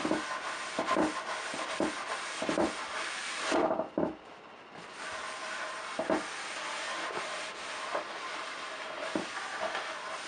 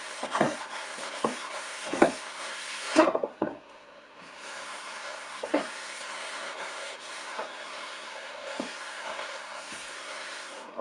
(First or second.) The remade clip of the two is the second